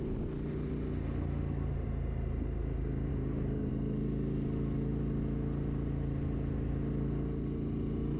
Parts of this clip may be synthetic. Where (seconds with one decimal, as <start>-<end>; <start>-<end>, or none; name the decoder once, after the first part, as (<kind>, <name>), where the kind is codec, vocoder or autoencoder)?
3.1-3.7 (codec, DAC)